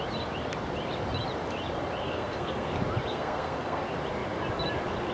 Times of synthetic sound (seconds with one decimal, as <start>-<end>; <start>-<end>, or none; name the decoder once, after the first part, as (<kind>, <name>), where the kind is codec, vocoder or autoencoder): 2.0-2.7 (codec, SNAC); 3.1-3.8

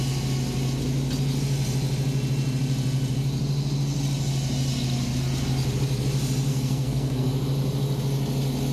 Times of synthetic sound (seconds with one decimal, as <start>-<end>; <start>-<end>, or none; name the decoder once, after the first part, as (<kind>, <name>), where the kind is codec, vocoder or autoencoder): 6.5-7.3 (codec, SNAC)

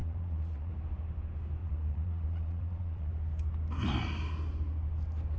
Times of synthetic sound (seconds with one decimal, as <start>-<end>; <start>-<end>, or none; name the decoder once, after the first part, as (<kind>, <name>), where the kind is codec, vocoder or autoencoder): 0.0-0.7 (vocoder, Vocos); 1.6-3.1

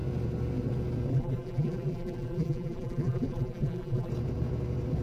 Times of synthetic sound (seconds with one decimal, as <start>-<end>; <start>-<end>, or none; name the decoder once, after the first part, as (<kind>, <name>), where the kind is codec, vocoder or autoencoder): 1.1-4.1 (vocoder, BigVGAN v2)

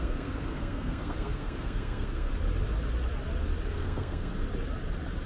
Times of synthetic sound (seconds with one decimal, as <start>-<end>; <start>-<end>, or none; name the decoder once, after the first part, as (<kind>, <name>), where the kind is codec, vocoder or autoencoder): 0.0-2.3 (codec, SNAC); 3.7-4.3

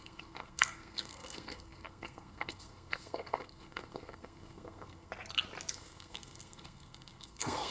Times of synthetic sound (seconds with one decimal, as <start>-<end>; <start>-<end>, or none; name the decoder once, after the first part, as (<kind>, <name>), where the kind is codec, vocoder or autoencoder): 0.0-5.1 (codec, SNAC); 5.7-7.7

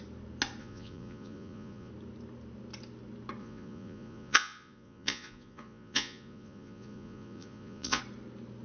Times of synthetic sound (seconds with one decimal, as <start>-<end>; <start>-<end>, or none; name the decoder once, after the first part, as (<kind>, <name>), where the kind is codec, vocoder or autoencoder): 0.6-1.9 (vocoder, Vocos); 3.4-8.0

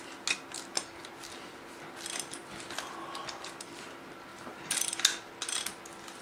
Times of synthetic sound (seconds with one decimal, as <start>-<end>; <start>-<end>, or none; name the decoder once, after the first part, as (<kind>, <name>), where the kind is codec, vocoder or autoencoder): 4.3-4.8 (vocoder, BigVGAN v2)